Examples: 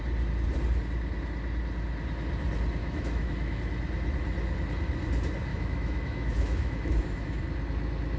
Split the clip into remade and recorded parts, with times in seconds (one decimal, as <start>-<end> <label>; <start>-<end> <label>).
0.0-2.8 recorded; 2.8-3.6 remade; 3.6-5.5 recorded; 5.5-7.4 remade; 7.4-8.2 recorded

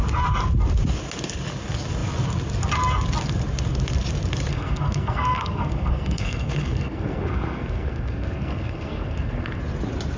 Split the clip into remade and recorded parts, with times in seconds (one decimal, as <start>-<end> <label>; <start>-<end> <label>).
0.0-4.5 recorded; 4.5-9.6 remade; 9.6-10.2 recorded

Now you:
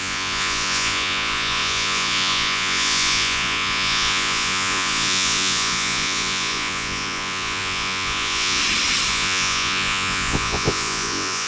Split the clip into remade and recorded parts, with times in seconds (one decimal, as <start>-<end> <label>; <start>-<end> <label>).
0.0-8.6 remade; 8.6-9.1 recorded; 9.1-11.5 remade

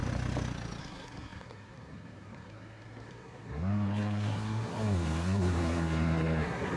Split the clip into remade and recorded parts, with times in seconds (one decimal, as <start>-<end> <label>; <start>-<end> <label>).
0.0-0.8 recorded; 0.8-6.8 remade